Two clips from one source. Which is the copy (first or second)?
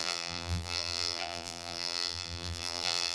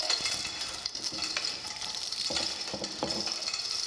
first